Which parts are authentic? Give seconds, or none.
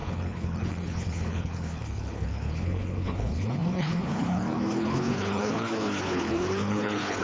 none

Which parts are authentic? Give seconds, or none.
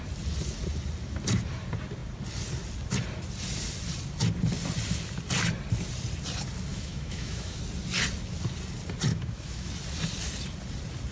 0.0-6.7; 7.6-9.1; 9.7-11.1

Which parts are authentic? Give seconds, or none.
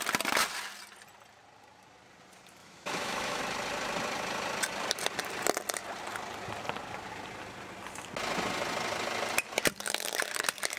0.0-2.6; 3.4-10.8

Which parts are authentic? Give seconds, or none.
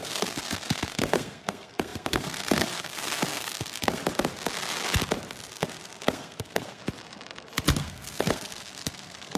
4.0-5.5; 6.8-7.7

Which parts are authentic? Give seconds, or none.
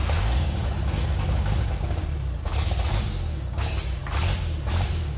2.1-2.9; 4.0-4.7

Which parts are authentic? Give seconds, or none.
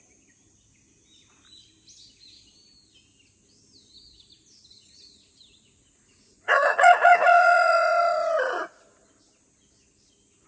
0.0-4.7; 8.6-10.5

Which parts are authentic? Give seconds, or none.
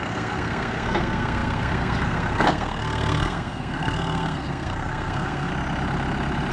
5.5-6.5